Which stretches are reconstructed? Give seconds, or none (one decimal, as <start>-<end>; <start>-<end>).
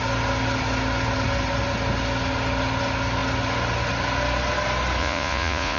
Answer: 5.0-5.8